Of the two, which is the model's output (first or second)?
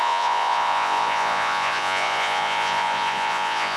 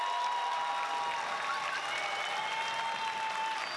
first